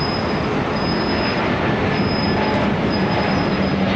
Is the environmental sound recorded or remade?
recorded